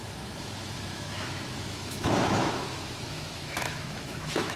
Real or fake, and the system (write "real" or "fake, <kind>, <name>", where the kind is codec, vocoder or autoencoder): fake, autoencoder, DAC-VAE